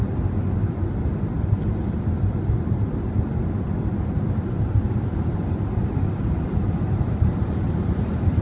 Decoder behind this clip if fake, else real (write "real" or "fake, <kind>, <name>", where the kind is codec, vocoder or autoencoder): real